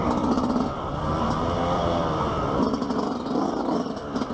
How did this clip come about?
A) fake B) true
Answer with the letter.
A